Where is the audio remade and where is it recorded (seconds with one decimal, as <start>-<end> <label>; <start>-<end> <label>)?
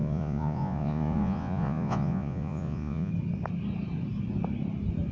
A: 0.0-3.1 remade; 3.1-5.1 recorded